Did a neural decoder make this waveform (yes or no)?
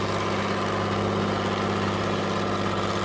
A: no